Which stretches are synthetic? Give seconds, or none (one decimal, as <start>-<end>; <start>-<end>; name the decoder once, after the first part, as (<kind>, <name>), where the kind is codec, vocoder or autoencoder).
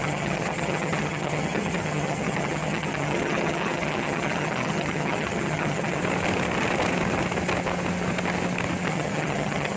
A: 0.0-6.0 (vocoder, HiFi-GAN); 8.9-9.8